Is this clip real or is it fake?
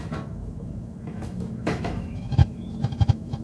fake